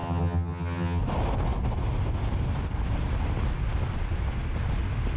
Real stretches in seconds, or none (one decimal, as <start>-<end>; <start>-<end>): 1.0-5.2